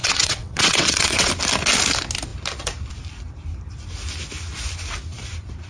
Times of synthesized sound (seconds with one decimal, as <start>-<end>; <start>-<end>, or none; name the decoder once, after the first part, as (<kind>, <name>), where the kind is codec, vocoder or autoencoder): 0.0-1.3 (vocoder, WaveNeXt)